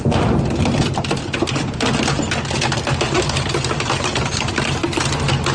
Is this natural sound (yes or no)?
yes